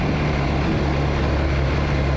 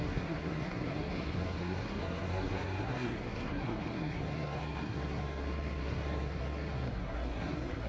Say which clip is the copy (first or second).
second